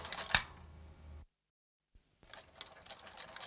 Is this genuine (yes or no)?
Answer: yes